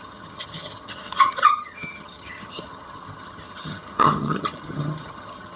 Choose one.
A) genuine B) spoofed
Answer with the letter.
B